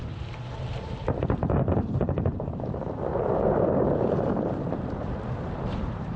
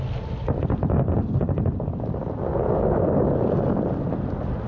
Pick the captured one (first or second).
second